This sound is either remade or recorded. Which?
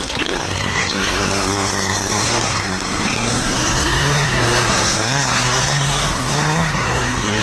remade